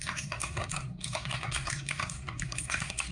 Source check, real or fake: fake